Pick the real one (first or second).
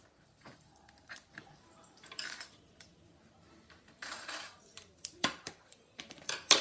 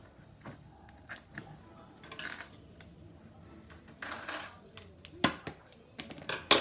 second